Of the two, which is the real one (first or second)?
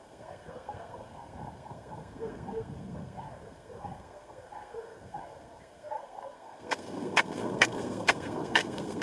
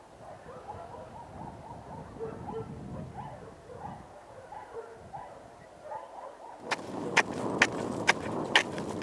second